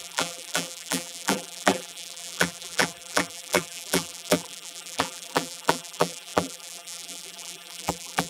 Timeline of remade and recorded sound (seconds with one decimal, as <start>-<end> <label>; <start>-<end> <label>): 0.0-8.3 remade